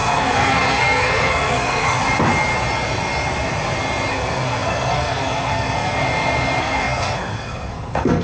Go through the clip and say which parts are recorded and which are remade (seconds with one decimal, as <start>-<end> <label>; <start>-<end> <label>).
0.0-2.0 remade; 2.0-4.1 recorded; 4.1-6.0 remade; 6.0-6.6 recorded; 6.6-8.2 remade